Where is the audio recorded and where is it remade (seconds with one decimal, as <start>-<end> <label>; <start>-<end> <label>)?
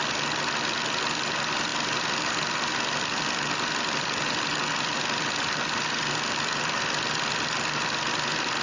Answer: 0.0-8.6 recorded